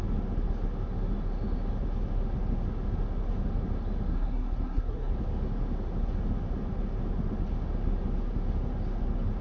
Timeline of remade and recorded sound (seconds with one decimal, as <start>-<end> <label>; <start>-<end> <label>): 0.0-4.1 recorded; 4.1-5.1 remade; 5.1-9.4 recorded